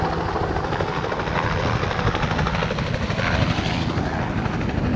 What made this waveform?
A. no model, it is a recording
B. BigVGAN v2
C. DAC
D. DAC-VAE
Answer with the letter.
A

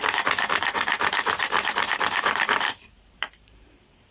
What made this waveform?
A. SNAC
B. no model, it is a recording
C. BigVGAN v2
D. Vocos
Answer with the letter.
C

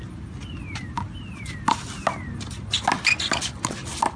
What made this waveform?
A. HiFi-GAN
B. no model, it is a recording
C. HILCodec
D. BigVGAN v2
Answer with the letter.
B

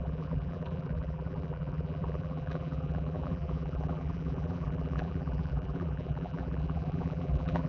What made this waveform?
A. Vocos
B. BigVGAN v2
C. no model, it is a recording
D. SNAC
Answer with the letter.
B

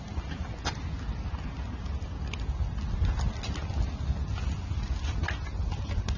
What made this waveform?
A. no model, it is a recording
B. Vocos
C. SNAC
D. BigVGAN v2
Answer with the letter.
A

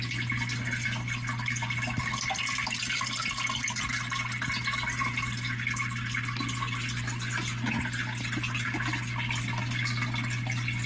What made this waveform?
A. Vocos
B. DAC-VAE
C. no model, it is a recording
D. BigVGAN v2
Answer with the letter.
C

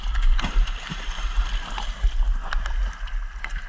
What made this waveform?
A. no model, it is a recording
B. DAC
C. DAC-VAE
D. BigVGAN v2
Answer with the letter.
A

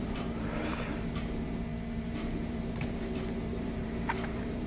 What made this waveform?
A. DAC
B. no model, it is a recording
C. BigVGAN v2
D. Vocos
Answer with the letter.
C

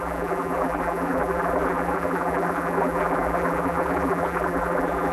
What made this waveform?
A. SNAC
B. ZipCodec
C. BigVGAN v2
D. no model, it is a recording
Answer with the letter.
C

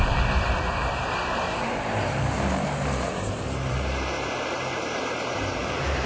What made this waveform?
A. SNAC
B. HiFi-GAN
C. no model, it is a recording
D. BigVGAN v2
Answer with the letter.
D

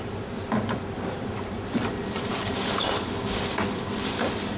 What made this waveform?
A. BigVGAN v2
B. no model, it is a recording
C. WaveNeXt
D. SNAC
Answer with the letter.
A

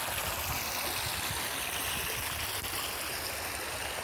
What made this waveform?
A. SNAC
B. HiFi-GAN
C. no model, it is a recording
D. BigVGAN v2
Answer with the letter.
C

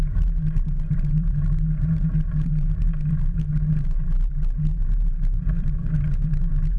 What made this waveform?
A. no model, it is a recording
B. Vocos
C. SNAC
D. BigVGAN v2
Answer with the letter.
D